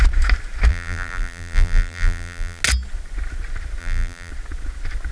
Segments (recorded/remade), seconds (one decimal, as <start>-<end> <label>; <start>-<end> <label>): 0.0-0.7 recorded; 0.7-2.6 remade; 2.6-3.8 recorded; 3.8-4.3 remade; 4.3-5.1 recorded